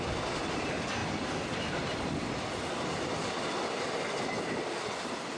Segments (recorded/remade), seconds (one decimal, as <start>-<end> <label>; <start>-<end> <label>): 0.0-5.4 recorded